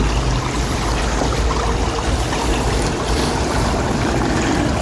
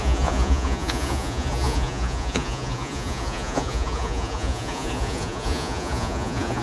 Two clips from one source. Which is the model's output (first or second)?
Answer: second